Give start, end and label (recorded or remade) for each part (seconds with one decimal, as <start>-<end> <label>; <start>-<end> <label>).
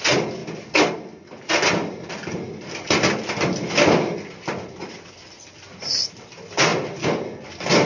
0.0-7.9 recorded